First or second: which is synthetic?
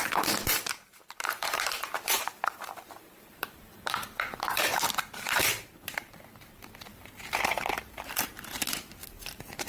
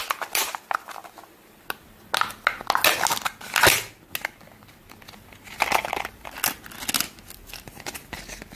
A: first